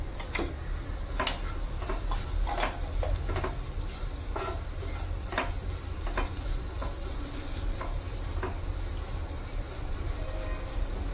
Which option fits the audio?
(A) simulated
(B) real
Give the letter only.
B